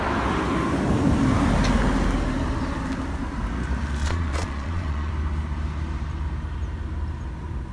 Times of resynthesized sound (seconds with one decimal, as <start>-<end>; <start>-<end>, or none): 4.0-5.1